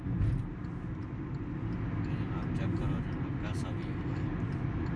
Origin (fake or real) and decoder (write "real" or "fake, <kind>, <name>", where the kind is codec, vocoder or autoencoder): real